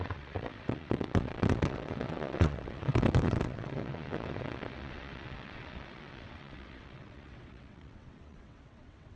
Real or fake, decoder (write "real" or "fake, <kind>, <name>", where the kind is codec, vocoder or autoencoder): fake, vocoder, WaveNeXt